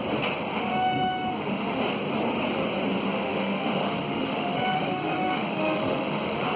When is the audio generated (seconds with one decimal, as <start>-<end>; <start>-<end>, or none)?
0.5-1.8; 3.1-6.6